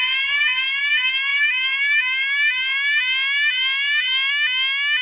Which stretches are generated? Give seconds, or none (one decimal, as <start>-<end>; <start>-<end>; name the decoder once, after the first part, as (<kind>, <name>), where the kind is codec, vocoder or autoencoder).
1.3-4.3 (autoencoder, DAC-VAE)